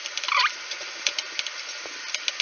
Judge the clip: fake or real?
real